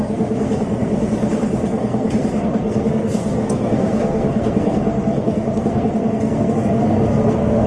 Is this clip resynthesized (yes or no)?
yes